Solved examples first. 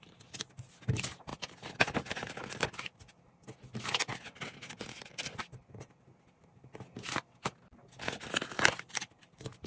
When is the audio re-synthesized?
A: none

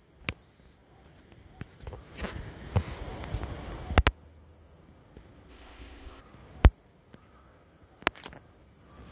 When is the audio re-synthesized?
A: 5.5-6.2 (codec, ZipCodec)

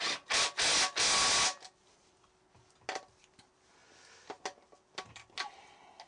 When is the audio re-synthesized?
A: none